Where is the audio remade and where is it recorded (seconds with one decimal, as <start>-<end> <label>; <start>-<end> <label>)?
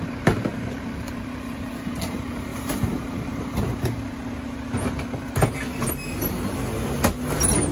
0.0-0.5 recorded; 0.5-1.7 remade; 1.7-2.5 recorded; 2.5-3.7 remade; 3.7-7.7 recorded